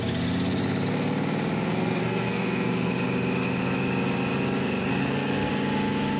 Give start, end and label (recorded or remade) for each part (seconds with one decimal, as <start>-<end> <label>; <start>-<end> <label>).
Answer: 0.0-1.7 recorded; 1.7-2.9 remade; 2.9-4.9 recorded; 4.9-5.5 remade; 5.5-6.2 recorded